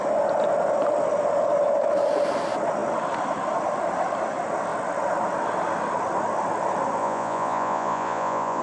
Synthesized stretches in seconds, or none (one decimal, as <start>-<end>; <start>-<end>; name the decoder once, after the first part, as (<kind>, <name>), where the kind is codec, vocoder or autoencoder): 7.0-8.6 (vocoder, Vocos)